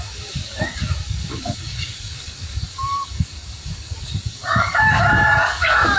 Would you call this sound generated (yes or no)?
yes